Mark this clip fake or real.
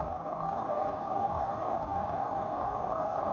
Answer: fake